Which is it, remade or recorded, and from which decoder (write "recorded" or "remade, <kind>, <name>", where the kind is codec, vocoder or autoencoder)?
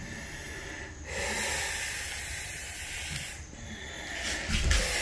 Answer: recorded